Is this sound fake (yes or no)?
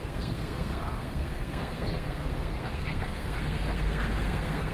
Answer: yes